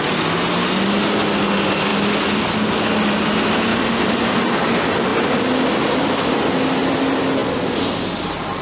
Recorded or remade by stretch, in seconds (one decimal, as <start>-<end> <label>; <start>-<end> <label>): 0.0-3.7 recorded; 3.7-4.4 remade; 4.4-8.6 recorded